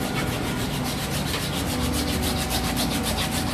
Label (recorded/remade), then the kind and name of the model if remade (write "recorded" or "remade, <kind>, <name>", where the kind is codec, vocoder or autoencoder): recorded